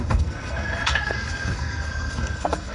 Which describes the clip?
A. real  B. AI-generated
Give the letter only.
B